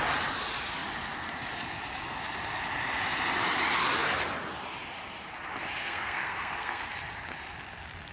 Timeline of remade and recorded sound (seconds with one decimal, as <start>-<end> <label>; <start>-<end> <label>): 0.0-5.8 recorded; 5.8-6.9 remade; 6.9-8.1 recorded